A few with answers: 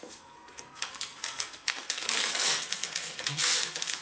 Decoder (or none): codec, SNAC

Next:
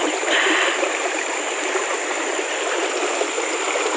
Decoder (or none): none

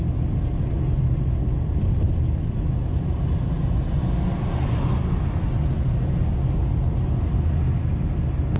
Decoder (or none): none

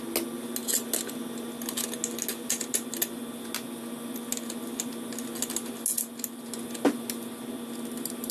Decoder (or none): none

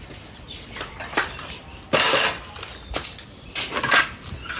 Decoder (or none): none